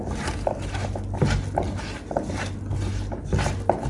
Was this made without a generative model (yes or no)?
yes